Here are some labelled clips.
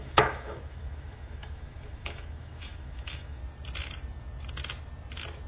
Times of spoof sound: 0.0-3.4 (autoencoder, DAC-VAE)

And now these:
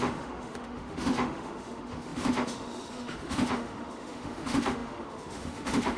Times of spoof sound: 0.0-6.0 (autoencoder, DAC-VAE)

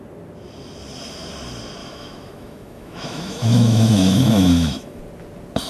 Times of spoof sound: 1.8-5.0 (autoencoder, DAC-VAE)